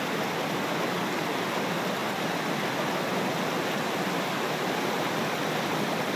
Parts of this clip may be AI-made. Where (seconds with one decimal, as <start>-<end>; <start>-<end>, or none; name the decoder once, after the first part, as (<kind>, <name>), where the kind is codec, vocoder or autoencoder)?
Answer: none